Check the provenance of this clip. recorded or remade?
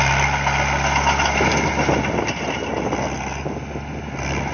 recorded